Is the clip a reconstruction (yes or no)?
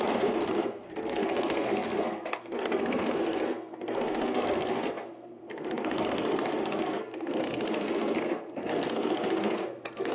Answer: yes